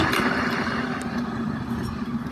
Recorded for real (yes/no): yes